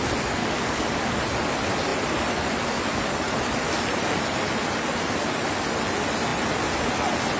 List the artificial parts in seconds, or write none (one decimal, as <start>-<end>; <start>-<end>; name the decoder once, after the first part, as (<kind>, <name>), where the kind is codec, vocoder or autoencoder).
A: 0.4-1.2 (codec, DAC)